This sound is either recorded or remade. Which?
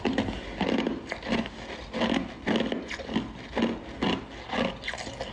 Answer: recorded